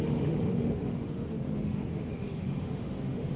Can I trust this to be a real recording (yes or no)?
no